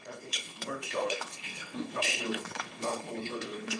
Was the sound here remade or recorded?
remade